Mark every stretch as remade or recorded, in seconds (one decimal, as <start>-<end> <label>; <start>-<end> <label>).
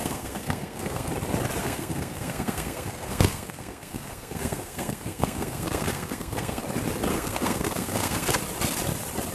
0.0-1.1 remade; 1.1-1.6 recorded; 1.6-6.6 remade; 6.6-7.1 recorded; 7.1-8.4 remade; 8.4-9.3 recorded